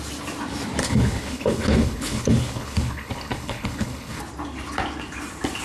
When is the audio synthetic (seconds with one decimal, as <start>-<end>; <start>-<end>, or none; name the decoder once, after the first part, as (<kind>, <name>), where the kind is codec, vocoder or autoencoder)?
0.8-4.2 (codec, HILCodec)